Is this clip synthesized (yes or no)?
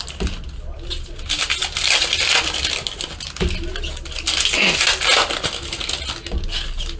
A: no